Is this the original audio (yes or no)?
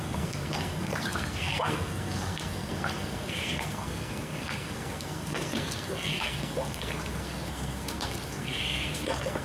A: no